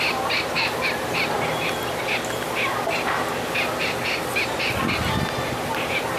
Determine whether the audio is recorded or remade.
recorded